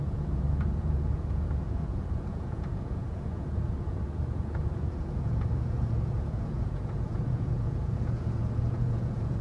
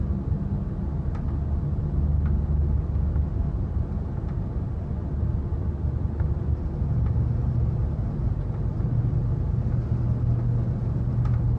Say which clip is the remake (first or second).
first